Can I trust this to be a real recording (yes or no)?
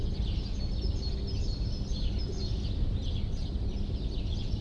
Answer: yes